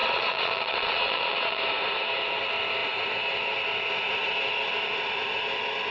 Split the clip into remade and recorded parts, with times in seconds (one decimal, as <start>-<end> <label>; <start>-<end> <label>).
0.0-1.6 remade; 1.6-5.9 recorded